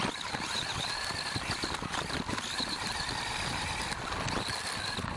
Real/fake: real